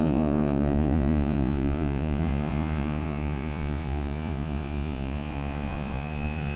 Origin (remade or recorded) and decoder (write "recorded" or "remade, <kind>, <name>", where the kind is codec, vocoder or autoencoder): remade, vocoder, Vocos